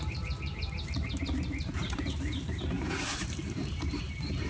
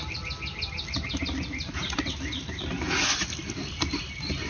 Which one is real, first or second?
second